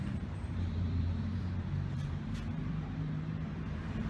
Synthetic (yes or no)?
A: yes